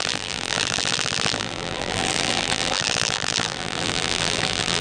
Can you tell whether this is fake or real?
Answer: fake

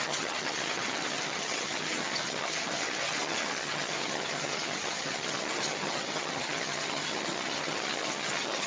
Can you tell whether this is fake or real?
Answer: fake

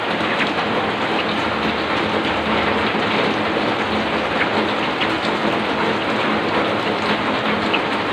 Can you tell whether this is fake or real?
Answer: real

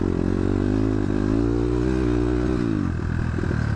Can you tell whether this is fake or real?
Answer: real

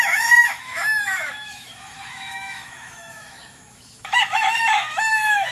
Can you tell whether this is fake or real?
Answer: fake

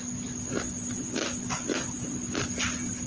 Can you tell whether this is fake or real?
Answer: real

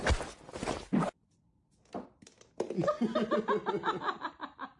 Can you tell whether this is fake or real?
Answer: real